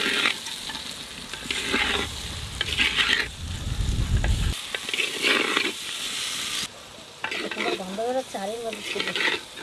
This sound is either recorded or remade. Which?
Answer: recorded